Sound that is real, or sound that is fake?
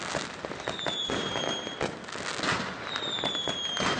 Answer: real